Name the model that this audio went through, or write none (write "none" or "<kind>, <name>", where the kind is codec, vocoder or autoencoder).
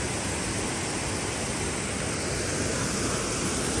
none